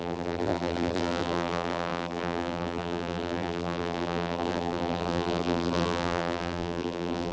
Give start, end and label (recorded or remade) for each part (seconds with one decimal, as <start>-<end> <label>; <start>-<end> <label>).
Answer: 0.0-7.3 remade